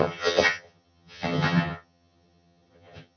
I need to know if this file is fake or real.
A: fake